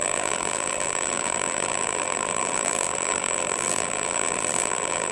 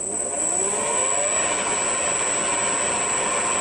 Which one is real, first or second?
second